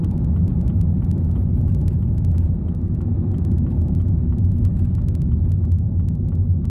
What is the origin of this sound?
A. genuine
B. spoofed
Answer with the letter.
A